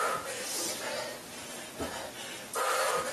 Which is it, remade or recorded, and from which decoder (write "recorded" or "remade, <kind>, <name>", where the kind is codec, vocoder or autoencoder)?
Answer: recorded